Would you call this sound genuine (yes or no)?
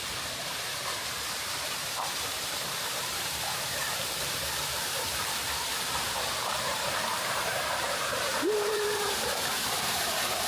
no